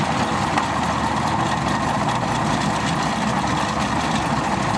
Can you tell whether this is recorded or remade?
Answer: recorded